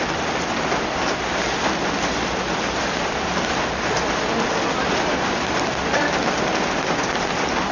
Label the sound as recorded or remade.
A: recorded